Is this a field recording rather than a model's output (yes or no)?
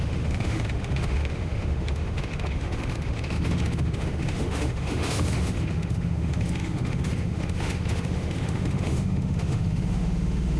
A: no